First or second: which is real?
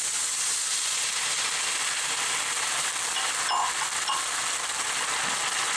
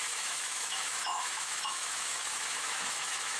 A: first